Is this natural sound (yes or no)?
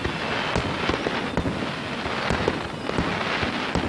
yes